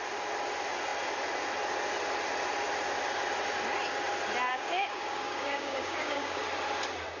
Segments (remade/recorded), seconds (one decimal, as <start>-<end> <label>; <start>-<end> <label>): 0.0-4.5 recorded; 4.5-6.4 remade; 6.4-7.2 recorded